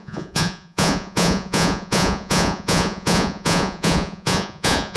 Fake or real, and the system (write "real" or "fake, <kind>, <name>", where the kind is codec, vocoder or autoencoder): fake, vocoder, Vocos